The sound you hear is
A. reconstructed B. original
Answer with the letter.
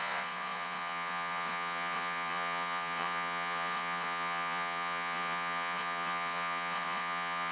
A